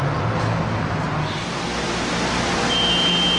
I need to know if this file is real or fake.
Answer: real